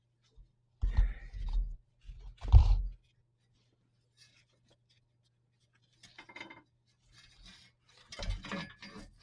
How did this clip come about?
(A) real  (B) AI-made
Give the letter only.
A